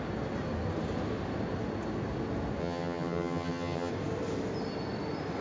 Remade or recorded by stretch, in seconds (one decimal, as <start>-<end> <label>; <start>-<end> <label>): 0.0-2.6 recorded; 2.6-3.9 remade; 3.9-5.4 recorded

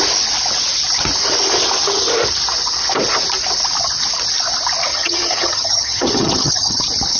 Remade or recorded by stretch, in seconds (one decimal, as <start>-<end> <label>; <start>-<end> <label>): 0.0-4.9 recorded; 4.9-6.8 remade; 6.8-7.2 recorded